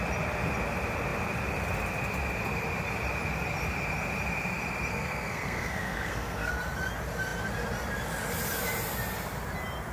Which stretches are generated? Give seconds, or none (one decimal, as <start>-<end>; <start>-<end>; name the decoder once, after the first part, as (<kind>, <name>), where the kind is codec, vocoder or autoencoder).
4.9-6.5 (codec, SNAC)